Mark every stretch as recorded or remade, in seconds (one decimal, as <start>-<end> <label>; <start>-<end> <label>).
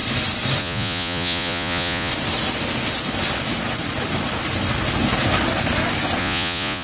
0.0-0.6 recorded; 0.6-2.1 remade; 2.1-6.2 recorded; 6.2-6.8 remade